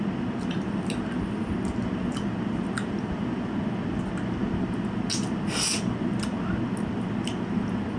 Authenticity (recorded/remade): recorded